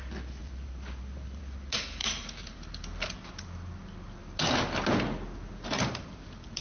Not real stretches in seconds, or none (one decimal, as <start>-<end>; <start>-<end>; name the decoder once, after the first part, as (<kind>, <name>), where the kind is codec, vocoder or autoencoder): 0.4-1.4 (vocoder, BigVGAN v2); 2.0-2.6